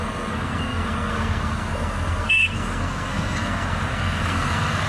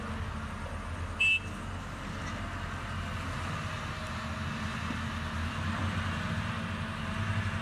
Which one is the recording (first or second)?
second